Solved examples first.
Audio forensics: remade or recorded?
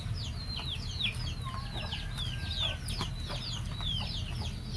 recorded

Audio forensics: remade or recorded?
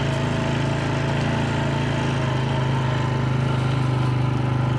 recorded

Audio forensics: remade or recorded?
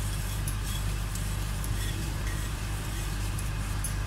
remade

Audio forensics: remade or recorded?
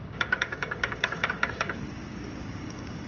remade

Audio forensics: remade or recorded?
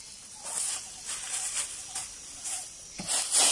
recorded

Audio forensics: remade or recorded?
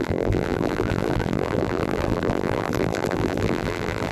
remade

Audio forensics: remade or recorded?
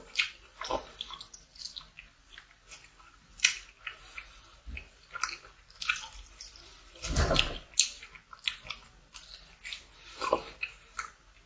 recorded